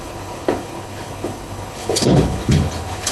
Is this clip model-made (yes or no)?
yes